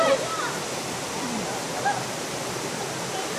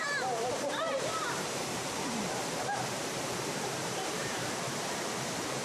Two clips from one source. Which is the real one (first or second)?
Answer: first